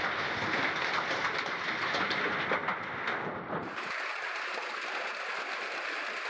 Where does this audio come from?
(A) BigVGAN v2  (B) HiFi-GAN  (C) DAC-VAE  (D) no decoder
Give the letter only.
D